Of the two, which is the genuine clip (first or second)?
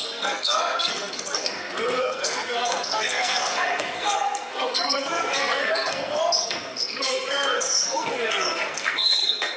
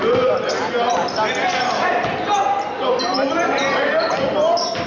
second